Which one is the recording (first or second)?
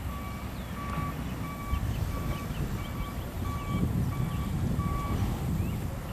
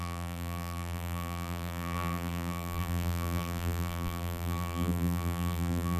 first